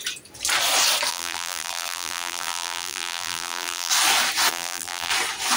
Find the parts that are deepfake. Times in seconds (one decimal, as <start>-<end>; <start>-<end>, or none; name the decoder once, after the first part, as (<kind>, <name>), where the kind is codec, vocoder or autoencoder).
1.1-3.9 (vocoder, BigVGAN v2); 4.5-5.1